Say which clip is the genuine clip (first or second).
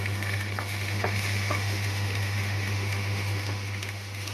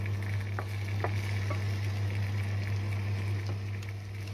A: second